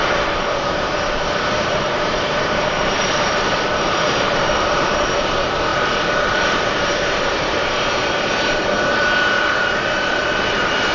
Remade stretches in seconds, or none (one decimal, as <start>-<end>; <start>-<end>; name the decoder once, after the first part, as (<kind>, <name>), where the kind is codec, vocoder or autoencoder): 0.0-10.9 (vocoder, BigVGAN v2)

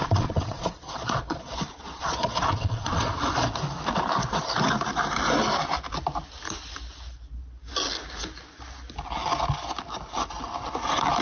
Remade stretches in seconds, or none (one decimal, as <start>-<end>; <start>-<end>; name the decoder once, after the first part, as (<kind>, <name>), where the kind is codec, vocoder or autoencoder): 0.0-3.2 (vocoder, Vocos)

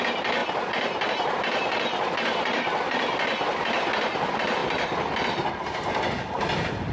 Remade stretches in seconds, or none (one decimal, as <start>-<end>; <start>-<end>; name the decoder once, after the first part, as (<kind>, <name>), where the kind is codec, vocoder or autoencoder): 0.0-0.4 (vocoder, BigVGAN v2); 1.1-4.6; 5.5-6.9

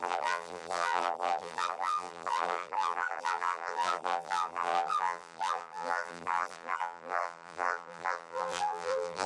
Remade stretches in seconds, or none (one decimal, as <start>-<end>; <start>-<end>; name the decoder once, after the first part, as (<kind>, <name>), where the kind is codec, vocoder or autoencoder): 0.0-9.3 (vocoder, BigVGAN v2)

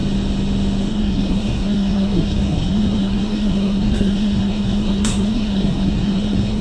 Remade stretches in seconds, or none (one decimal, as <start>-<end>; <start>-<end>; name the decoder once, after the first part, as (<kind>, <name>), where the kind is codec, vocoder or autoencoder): 0.9-6.6 (codec, SNAC)

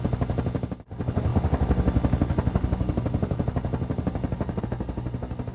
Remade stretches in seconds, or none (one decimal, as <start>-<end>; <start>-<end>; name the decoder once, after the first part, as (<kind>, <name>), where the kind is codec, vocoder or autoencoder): none